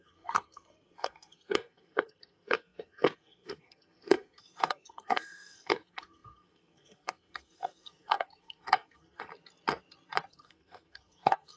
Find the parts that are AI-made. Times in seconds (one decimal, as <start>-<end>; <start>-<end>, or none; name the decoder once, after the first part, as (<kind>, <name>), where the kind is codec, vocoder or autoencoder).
0.0-9.3 (codec, SNAC); 10.3-11.6

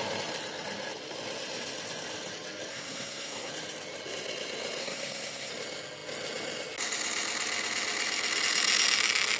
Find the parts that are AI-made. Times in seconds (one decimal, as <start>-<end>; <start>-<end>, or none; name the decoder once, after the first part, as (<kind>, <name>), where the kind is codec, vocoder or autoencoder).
2.7-3.5 (codec, SNAC); 4.8-5.5